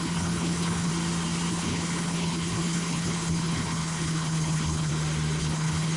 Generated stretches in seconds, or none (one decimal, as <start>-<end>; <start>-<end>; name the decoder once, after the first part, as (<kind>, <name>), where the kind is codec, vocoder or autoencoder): 0.0-0.9 (codec, HILCodec); 1.5-4.9; 5.4-6.0